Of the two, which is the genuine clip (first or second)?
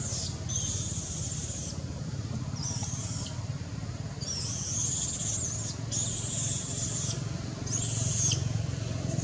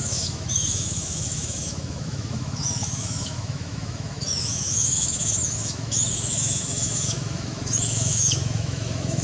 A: first